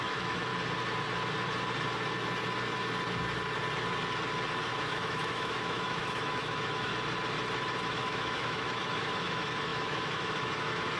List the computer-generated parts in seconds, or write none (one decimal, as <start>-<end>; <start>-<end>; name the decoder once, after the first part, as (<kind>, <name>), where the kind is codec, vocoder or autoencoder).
0.0-0.5 (autoencoder, DAC-VAE); 4.7-6.9; 7.9-11.0